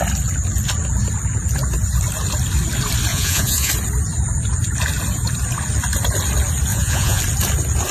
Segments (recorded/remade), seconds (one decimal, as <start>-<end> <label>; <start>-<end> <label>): 0.0-3.1 recorded; 3.1-3.7 remade; 3.7-6.7 recorded; 6.7-7.2 remade; 7.2-7.9 recorded